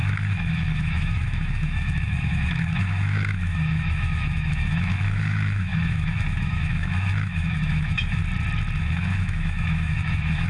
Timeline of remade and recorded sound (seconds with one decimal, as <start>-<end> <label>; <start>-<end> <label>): 0.0-8.2 remade; 8.2-8.8 recorded; 8.8-10.5 remade